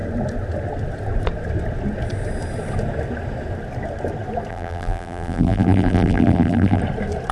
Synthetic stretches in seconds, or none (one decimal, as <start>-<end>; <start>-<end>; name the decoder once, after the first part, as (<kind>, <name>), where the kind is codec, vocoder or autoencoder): 4.5-6.8 (vocoder, BigVGAN v2)